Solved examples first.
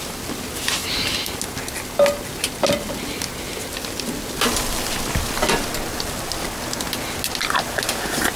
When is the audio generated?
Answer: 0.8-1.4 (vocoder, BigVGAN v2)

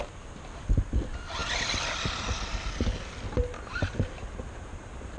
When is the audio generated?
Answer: none

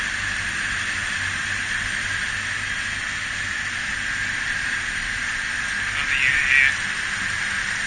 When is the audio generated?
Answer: none